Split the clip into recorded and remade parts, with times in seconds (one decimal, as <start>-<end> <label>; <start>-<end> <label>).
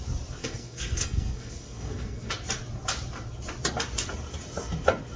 0.0-0.4 recorded; 0.4-2.3 remade; 2.3-5.2 recorded